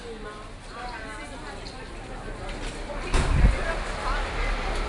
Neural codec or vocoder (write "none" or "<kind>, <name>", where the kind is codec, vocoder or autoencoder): none